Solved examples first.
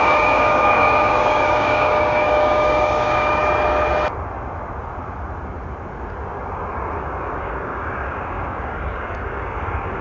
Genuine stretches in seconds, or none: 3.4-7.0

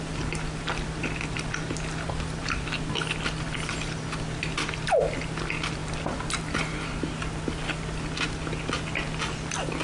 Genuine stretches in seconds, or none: 0.0-9.8

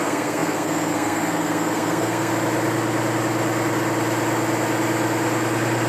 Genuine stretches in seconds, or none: 2.3-5.9

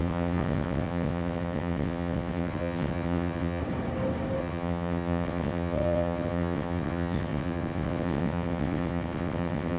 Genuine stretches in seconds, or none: 3.6-4.4

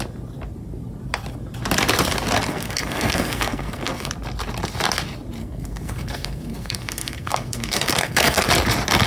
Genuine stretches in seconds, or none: 0.0-2.5; 4.1-5.4; 8.5-9.1